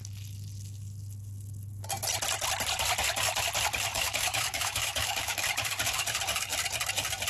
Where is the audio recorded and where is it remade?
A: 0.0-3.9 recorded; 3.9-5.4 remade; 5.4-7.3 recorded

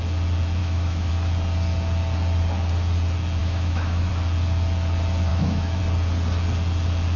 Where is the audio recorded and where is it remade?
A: 0.0-0.6 recorded; 0.6-1.1 remade; 1.1-3.4 recorded; 3.4-4.1 remade; 4.1-5.3 recorded; 5.3-5.8 remade; 5.8-7.2 recorded

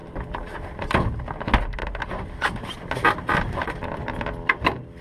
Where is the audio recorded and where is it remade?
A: 0.0-5.0 recorded

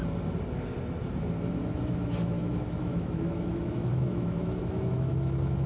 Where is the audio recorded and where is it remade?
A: 0.0-1.7 recorded; 1.7-5.7 remade